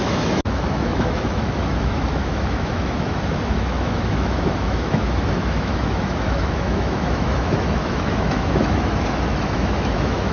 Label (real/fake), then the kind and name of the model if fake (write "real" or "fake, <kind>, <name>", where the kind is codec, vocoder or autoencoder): fake, autoencoder, DAC-VAE